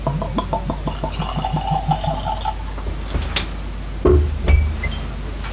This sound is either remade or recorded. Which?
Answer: recorded